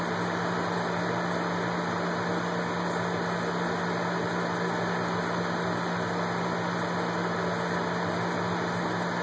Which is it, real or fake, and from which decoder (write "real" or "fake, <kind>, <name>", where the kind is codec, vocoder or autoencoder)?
real